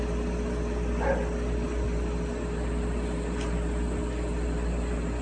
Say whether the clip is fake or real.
real